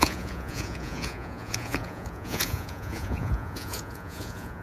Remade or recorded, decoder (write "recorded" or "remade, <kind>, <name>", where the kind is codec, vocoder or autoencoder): remade, vocoder, Vocos